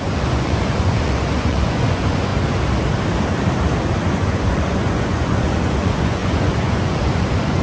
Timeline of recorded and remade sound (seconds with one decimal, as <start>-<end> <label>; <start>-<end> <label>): 0.0-2.3 remade; 2.3-4.1 recorded; 4.1-7.6 remade